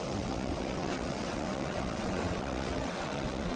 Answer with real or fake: fake